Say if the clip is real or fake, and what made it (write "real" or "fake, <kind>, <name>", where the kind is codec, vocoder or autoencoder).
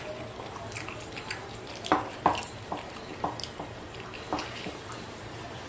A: real